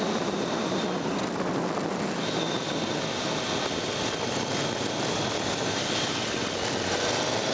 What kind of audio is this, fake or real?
real